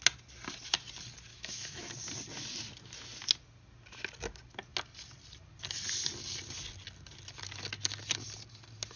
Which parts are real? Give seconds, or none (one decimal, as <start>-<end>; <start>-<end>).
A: 0.0-1.3; 1.9-9.0